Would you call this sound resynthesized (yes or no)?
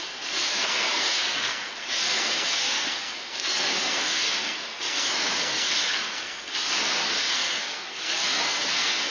yes